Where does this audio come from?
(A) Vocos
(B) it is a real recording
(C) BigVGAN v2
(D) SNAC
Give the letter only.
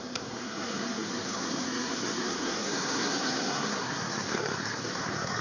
D